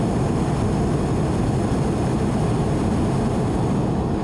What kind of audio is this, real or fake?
real